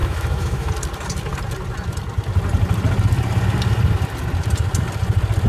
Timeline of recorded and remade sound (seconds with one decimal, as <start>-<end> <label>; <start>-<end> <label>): 0.0-0.7 remade; 0.7-5.5 recorded